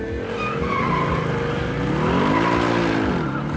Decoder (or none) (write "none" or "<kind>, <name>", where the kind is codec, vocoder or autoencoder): none